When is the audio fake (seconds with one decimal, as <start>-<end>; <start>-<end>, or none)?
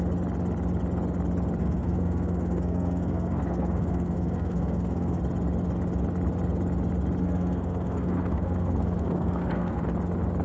1.6-5.2; 7.2-9.8